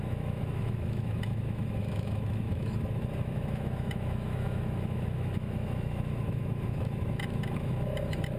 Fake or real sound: fake